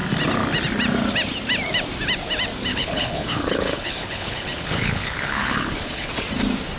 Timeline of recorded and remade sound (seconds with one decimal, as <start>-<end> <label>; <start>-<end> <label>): 0.0-2.7 recorded; 2.7-6.1 remade; 6.1-6.8 recorded